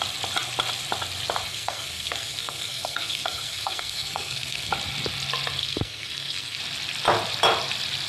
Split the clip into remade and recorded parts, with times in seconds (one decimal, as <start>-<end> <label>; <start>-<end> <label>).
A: 0.0-1.5 recorded; 1.5-4.7 remade; 4.7-5.6 recorded; 5.6-6.6 remade; 6.6-8.1 recorded